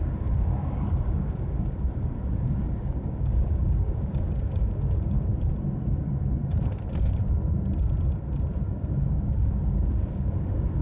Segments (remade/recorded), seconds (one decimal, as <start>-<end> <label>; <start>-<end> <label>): 0.0-5.3 remade; 5.3-8.5 recorded; 8.5-10.8 remade